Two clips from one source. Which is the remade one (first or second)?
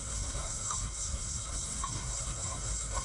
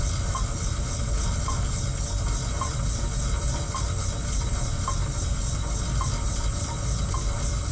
first